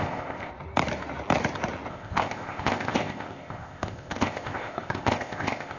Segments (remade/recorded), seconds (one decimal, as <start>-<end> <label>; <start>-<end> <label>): 0.0-0.5 remade; 0.5-1.9 recorded; 1.9-5.8 remade